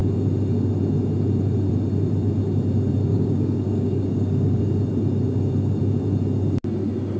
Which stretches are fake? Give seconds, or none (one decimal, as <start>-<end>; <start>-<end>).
3.1-4.6